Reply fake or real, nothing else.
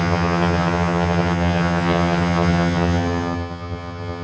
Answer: fake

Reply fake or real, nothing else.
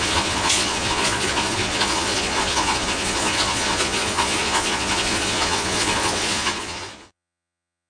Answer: fake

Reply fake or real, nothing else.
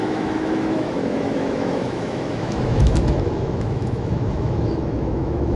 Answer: fake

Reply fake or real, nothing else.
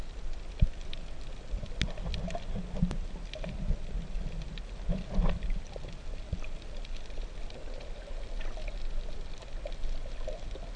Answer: real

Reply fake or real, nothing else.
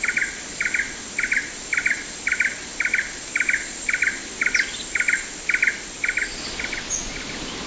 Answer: real